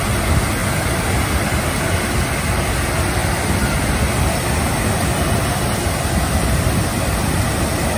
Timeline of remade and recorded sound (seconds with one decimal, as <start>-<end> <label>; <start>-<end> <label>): 0.0-0.6 remade; 0.6-1.8 recorded; 1.8-3.2 remade; 3.2-7.3 recorded; 7.3-8.0 remade